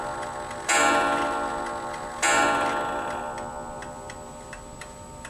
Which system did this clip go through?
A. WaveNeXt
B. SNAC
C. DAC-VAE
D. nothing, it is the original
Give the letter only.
D